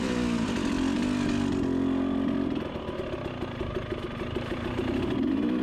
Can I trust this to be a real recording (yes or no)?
yes